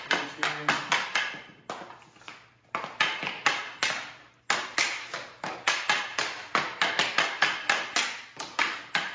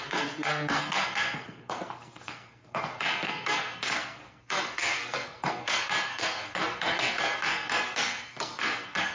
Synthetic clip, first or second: second